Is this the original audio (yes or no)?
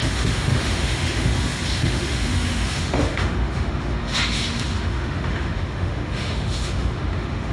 no